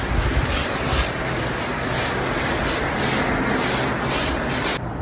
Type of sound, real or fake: real